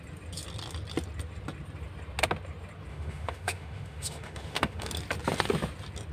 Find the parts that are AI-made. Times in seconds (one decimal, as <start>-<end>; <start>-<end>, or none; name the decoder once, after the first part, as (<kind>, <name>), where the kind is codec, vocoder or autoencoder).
2.9-4.9 (autoencoder, DAC-VAE)